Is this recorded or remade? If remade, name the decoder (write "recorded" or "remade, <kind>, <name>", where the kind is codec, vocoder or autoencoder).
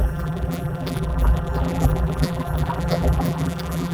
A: remade, vocoder, BigVGAN v2